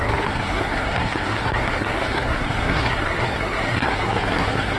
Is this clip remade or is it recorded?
remade